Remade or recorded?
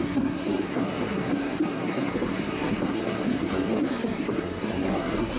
remade